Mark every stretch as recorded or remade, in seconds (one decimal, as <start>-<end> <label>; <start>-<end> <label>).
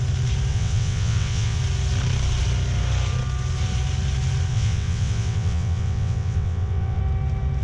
0.0-0.5 recorded; 0.5-1.6 remade; 1.6-4.5 recorded; 4.5-7.0 remade; 7.0-7.6 recorded